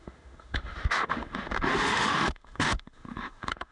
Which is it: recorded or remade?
remade